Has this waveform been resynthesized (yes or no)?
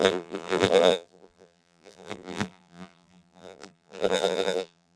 yes